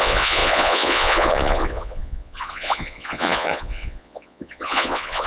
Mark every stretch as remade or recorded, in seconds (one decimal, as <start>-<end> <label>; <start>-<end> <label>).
0.0-5.3 remade